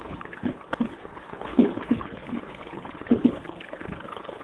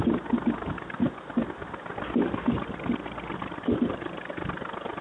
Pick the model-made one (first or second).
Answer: first